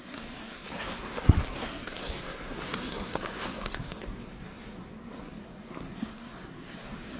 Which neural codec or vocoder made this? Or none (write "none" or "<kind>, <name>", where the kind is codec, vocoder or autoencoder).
codec, SNAC